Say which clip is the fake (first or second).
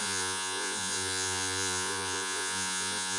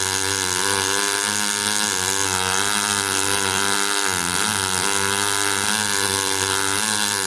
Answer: first